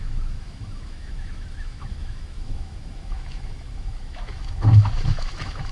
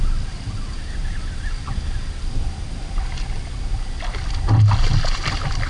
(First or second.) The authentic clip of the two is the second